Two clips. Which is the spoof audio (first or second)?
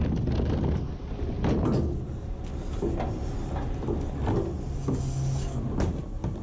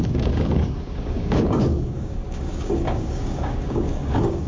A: second